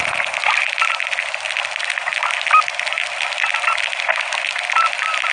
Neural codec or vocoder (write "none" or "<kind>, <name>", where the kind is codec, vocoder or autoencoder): none